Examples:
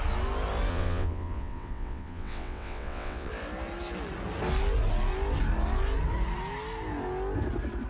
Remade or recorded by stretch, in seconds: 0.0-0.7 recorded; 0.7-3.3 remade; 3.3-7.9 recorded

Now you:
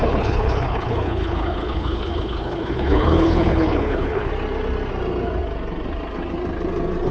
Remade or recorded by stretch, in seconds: 0.0-4.3 remade; 4.3-7.1 recorded